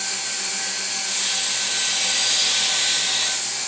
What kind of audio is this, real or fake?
real